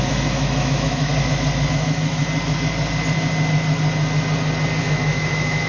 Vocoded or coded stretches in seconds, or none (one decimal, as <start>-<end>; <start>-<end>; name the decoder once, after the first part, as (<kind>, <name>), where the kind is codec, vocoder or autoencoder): 0.0-1.1 (autoencoder, DAC-VAE); 1.7-2.2; 4.8-5.7